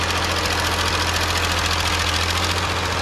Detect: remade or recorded recorded